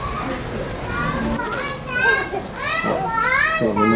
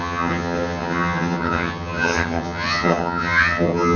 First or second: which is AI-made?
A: second